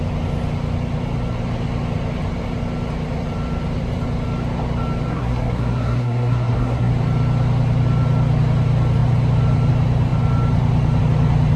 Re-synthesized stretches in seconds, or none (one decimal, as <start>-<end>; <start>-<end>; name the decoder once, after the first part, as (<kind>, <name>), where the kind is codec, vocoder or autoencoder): 5.1-6.9 (codec, SNAC)